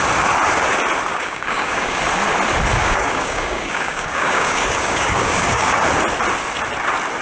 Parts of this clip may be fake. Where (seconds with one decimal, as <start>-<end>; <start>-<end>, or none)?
1.1-2.0; 2.8-5.8